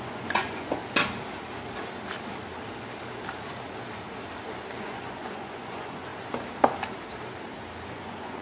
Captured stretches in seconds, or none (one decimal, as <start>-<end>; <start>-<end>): 0.8-4.8; 6.1-7.9